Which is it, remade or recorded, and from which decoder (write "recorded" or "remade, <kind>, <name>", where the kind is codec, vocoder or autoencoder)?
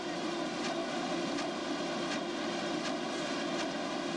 recorded